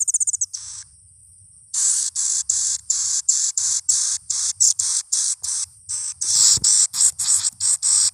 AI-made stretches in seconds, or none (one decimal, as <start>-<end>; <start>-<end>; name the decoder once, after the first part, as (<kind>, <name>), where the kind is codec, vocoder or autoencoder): 1.2-2.0 (vocoder, BigVGAN v2); 2.8-5.9